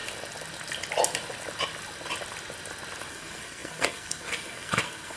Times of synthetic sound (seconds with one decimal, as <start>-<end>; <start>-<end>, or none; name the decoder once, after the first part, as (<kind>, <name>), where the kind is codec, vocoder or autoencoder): 3.1-5.2 (codec, SNAC)